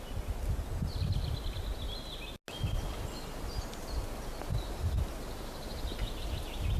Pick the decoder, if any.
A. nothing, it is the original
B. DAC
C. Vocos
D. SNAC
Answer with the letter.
A